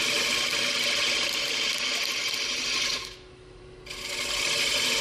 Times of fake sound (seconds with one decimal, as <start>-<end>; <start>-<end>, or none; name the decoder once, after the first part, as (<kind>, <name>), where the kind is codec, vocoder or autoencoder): 3.0-3.6 (autoencoder, DAC-VAE)